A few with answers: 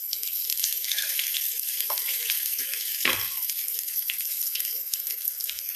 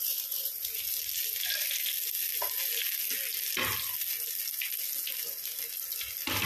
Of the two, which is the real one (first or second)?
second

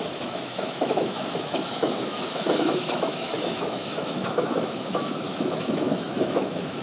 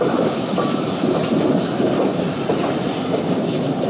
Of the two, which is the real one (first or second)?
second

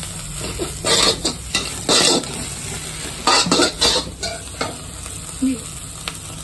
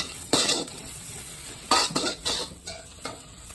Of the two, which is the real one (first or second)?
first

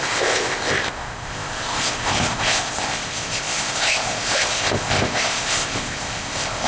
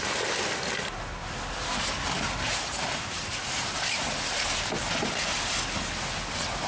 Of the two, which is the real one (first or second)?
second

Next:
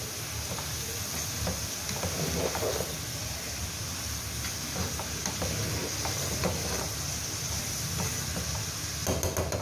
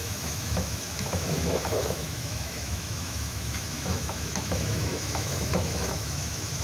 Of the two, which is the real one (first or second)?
first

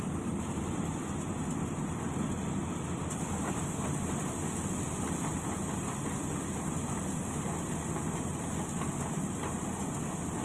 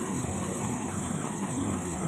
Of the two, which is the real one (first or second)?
first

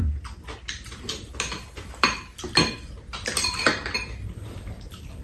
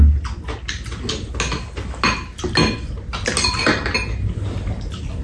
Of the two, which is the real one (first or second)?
second